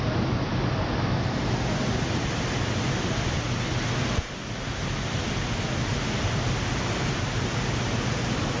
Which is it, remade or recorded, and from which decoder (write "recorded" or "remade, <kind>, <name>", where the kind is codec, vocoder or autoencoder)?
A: recorded